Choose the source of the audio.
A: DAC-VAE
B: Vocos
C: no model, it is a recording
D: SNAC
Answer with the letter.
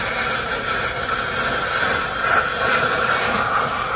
C